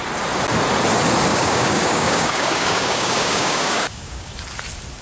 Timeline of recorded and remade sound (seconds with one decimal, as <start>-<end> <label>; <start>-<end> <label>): 0.0-1.3 recorded; 1.3-4.3 remade; 4.3-5.0 recorded